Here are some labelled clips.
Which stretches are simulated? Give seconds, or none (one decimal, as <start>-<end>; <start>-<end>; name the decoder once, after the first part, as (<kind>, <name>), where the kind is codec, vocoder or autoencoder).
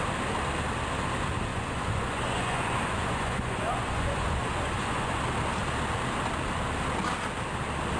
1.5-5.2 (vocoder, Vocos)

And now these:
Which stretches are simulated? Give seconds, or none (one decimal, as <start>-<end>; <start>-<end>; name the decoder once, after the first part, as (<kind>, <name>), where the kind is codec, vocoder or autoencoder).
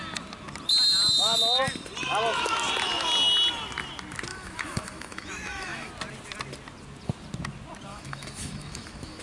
4.3-5.9 (autoencoder, DAC-VAE); 7.9-9.2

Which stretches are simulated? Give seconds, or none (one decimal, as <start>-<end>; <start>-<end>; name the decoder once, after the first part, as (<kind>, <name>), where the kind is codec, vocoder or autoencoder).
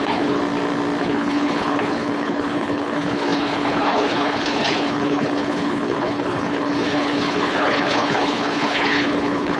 0.0-0.4 (codec, HILCodec); 1.0-9.6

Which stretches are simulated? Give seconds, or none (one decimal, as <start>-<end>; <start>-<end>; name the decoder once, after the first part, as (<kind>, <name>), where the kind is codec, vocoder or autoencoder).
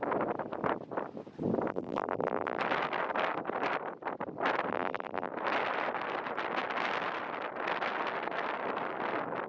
1.7-2.6 (vocoder, BigVGAN v2); 4.7-5.3